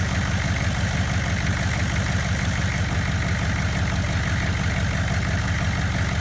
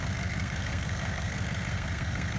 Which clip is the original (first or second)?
first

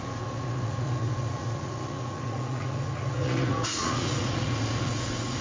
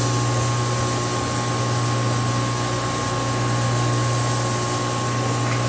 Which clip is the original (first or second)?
second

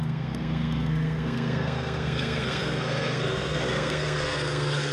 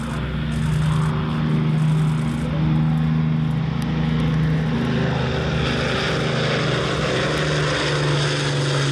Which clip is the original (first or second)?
second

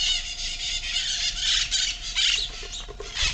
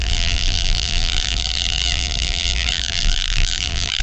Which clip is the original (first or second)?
first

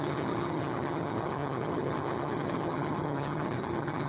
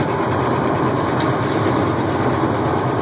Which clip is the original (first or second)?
second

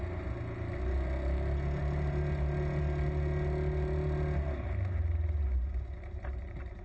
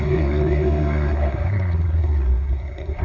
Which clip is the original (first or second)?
first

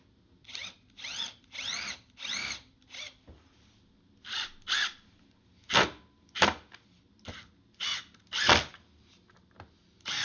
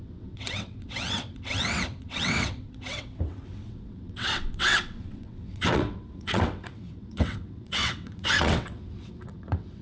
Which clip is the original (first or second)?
first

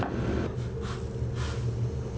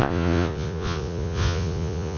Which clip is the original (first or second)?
first